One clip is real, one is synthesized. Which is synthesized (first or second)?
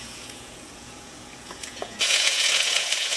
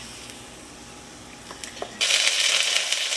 first